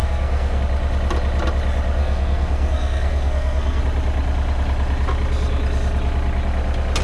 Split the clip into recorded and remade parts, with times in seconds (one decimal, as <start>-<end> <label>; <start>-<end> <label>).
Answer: 0.0-0.6 remade; 0.6-2.0 recorded; 2.0-3.8 remade; 3.8-7.0 recorded